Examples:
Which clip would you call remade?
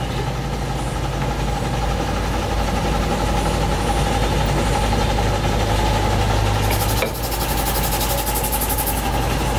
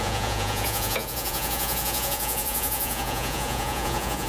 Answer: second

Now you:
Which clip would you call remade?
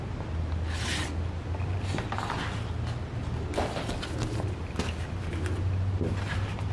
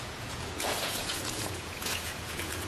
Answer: second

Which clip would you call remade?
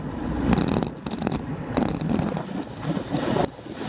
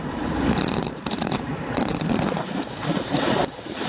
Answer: second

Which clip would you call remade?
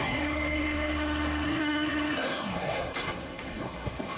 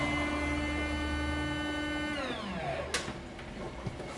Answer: first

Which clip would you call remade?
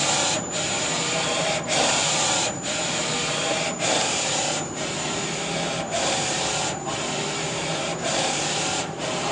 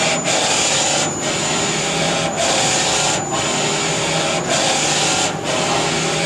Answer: first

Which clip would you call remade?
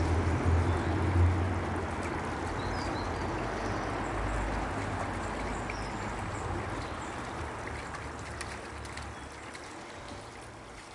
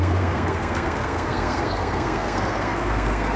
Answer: second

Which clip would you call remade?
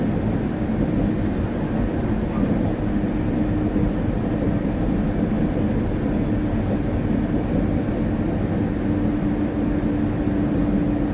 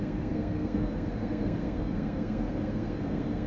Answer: second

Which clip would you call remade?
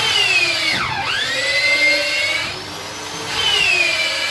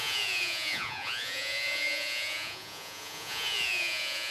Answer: second